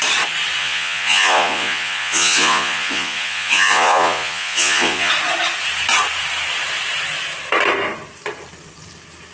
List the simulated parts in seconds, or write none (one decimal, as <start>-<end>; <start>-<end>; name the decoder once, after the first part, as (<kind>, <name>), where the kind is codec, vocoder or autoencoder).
0.6-5.1 (vocoder, Vocos)